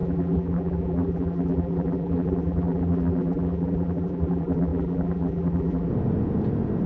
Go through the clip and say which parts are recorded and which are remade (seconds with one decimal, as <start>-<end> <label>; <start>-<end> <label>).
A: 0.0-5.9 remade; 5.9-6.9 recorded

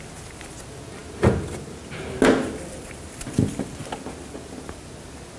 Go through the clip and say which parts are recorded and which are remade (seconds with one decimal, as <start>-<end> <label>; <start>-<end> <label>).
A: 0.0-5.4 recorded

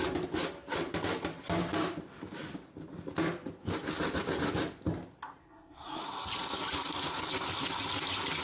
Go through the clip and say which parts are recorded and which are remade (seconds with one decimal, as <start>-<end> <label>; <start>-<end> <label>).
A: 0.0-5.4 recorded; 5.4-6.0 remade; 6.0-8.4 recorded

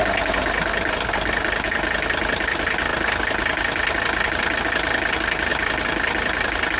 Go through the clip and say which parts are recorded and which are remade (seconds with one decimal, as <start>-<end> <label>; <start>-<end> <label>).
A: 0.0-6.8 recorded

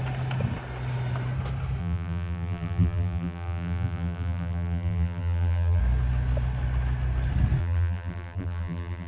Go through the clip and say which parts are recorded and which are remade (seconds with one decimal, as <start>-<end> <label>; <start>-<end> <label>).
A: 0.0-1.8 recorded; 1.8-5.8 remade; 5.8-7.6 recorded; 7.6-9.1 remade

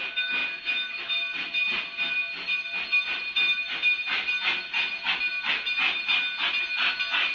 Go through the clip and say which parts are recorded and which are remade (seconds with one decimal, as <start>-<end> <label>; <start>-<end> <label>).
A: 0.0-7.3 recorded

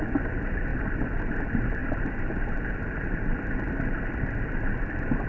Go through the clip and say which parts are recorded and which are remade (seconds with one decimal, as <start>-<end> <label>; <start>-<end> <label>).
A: 0.0-5.3 recorded

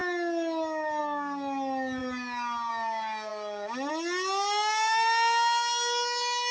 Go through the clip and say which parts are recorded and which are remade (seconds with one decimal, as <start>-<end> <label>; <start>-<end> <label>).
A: 0.0-6.5 recorded